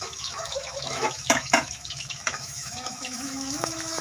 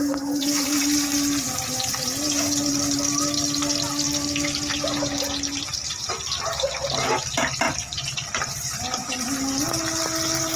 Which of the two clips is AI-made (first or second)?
first